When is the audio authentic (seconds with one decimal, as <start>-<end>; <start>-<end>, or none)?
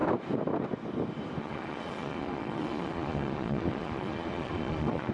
0.0-1.4